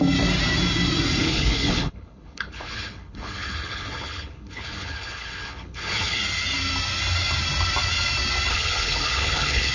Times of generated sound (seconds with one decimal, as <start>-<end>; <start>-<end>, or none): 1.2-6.2; 8.5-9.7